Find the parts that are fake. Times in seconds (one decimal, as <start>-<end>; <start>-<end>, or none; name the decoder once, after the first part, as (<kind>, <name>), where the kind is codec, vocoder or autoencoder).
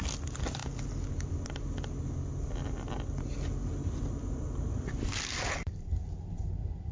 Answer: none